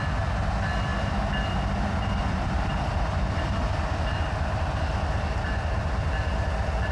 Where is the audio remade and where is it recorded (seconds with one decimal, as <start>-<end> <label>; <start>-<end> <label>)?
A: 0.0-6.9 recorded